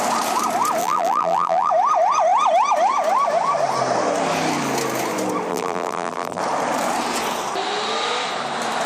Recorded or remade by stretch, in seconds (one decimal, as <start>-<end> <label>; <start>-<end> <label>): 0.0-0.8 recorded; 0.8-1.7 remade; 1.7-5.5 recorded; 5.5-6.4 remade; 6.4-8.9 recorded